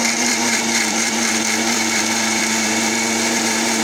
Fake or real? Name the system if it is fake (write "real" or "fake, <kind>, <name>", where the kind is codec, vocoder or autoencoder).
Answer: fake, vocoder, BigVGAN v2